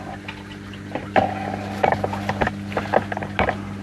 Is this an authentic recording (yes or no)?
yes